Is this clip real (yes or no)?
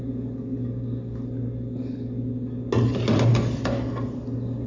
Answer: yes